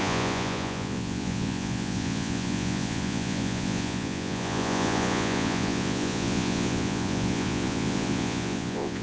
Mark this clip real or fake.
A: fake